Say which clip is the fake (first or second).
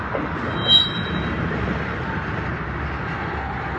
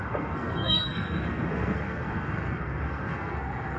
second